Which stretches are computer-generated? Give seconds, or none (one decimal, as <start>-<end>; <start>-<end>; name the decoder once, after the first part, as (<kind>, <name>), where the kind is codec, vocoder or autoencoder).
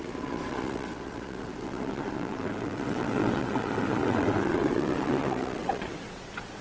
0.0-6.6 (vocoder, WaveNeXt)